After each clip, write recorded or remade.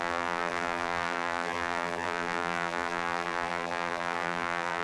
remade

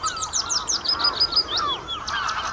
remade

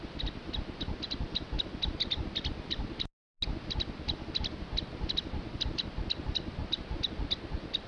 recorded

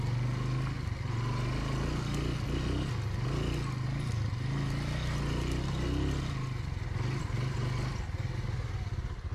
recorded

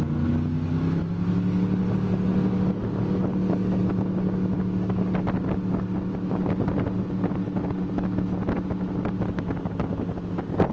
recorded